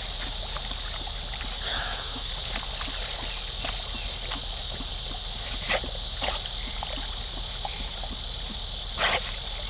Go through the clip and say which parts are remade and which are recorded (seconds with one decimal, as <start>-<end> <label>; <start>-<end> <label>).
0.0-1.7 recorded; 1.7-2.3 remade; 2.3-9.7 recorded